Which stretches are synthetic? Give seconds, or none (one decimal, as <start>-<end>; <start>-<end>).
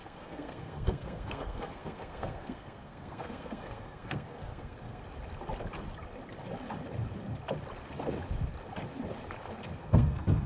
0.0-5.0; 9.8-10.5